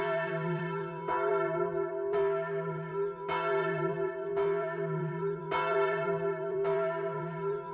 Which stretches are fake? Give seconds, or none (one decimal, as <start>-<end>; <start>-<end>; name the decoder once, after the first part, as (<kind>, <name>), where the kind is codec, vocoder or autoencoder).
0.0-7.7 (vocoder, BigVGAN v2)